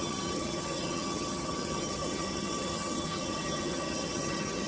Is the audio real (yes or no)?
no